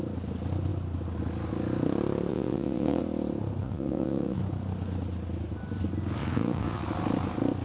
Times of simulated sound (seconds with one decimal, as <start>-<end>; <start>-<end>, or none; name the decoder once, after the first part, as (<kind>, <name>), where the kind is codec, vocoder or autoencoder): 2.3-3.0 (vocoder, Vocos); 3.6-4.4; 6.2-6.8